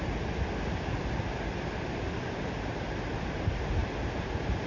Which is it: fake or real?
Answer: real